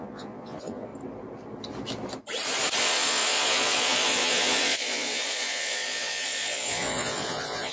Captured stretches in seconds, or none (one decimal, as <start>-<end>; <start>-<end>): 0.9-2.8